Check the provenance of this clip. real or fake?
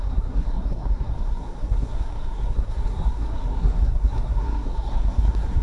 fake